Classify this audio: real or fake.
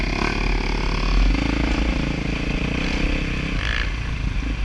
real